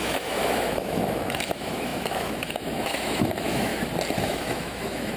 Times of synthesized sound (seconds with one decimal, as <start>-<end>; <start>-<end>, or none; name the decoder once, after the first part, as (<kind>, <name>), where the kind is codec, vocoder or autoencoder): 0.0-3.7 (autoencoder, DAC-VAE); 4.2-5.2